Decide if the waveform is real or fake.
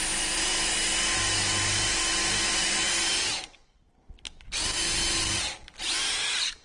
real